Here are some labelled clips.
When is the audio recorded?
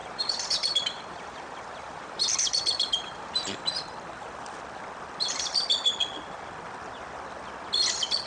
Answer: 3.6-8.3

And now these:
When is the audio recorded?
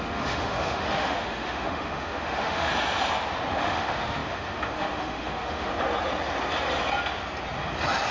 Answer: 2.7-3.5; 5.7-8.1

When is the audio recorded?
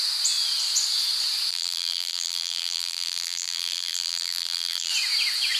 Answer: 0.0-1.5; 4.9-5.6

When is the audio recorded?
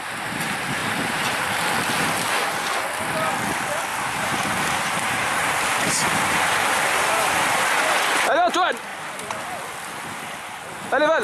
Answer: 0.0-0.8; 1.7-3.9; 7.3-11.2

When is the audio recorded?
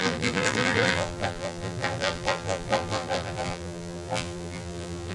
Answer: none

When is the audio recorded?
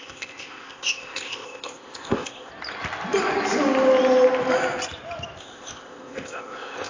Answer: 2.5-5.4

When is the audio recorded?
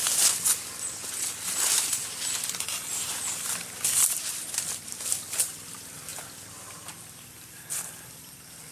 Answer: 0.0-3.4; 6.1-7.0